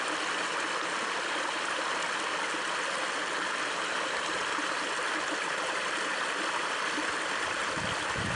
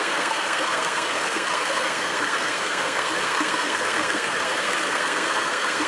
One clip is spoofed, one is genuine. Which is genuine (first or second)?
first